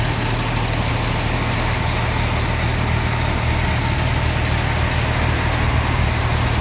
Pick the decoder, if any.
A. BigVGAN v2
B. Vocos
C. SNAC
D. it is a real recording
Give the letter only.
D